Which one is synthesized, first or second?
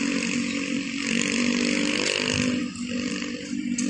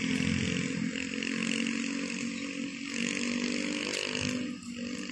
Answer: first